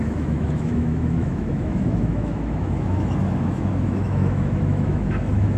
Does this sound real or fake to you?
fake